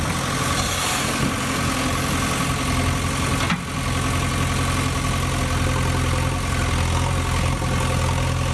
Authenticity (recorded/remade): recorded